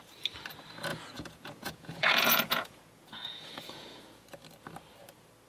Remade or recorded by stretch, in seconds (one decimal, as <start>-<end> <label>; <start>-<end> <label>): 0.0-0.9 recorded; 0.9-4.0 remade; 4.0-5.5 recorded